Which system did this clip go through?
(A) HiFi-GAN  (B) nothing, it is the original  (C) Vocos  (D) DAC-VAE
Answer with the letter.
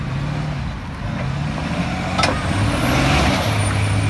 B